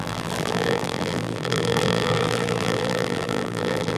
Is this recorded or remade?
remade